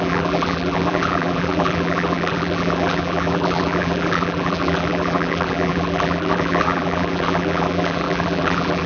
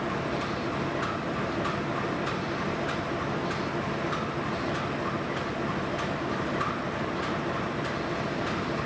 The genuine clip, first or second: second